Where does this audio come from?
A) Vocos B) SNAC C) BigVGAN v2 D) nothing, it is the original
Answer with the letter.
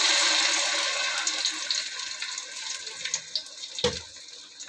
D